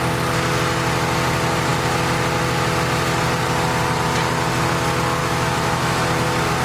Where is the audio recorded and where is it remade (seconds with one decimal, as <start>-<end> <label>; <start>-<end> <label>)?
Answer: 0.0-5.2 recorded; 5.2-6.0 remade; 6.0-6.6 recorded